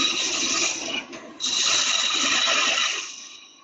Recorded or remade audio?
recorded